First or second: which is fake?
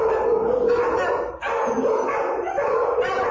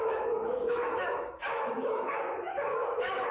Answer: second